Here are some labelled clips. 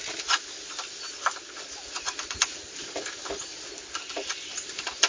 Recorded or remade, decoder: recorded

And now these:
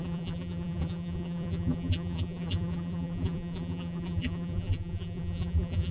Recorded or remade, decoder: remade, vocoder, BigVGAN v2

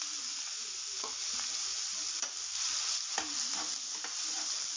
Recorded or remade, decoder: recorded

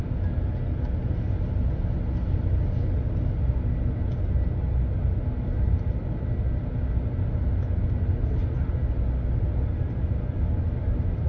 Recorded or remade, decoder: recorded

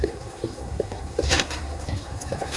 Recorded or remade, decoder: remade, codec, SNAC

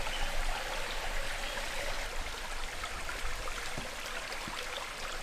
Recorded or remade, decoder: recorded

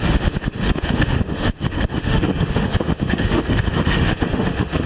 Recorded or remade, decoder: remade, autoencoder, DAC-VAE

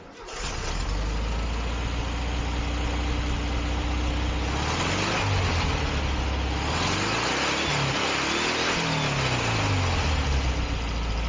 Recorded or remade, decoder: recorded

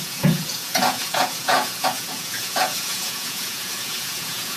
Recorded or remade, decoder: remade, vocoder, Vocos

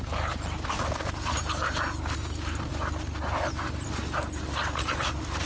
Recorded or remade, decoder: recorded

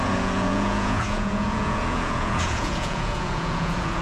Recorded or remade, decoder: remade, vocoder, Vocos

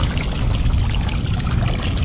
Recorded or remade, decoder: recorded